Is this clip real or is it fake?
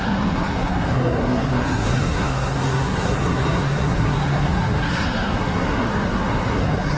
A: fake